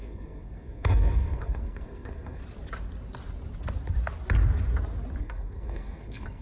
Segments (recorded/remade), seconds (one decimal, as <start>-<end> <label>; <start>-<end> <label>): 0.0-2.4 remade; 2.4-5.2 recorded; 5.2-6.4 remade